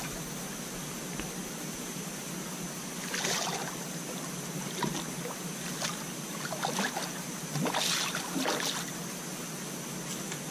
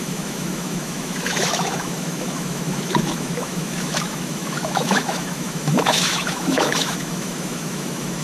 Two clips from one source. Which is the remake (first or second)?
second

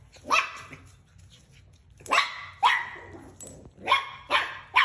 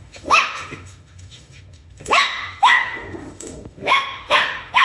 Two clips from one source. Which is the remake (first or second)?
second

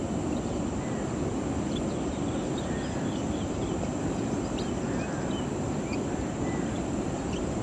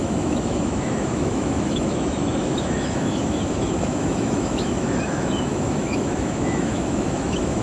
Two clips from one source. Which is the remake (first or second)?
second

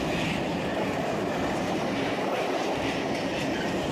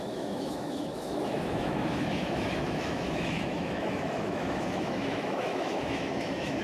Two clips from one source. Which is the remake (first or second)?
second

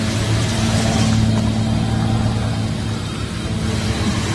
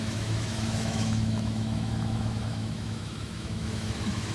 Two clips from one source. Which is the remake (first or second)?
second